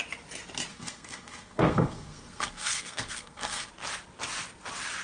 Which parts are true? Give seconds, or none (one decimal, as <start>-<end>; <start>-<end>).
0.0-0.7; 3.7-5.0